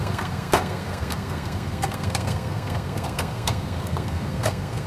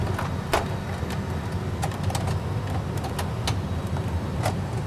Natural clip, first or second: second